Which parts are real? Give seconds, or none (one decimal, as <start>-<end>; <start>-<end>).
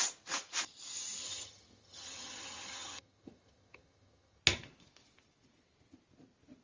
0.0-1.2; 4.4-6.6